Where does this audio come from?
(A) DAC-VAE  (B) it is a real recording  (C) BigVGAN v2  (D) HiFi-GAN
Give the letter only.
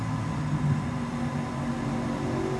B